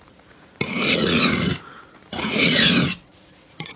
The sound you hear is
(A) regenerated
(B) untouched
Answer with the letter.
A